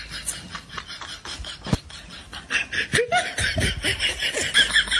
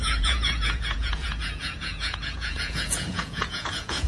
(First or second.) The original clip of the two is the first